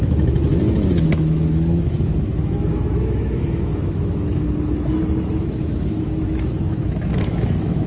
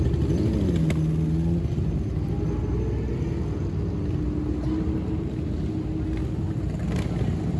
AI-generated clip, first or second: first